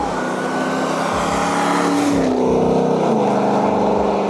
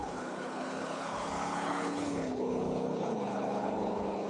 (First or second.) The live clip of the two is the first